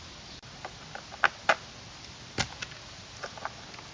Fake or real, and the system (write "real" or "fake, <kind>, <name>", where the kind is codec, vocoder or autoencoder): real